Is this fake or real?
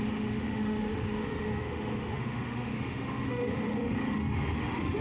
fake